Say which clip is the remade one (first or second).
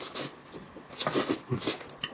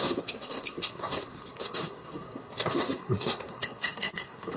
second